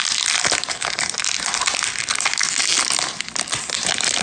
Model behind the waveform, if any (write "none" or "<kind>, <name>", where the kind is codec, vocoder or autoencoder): none